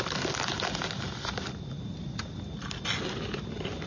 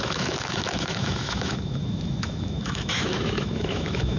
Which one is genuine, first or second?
first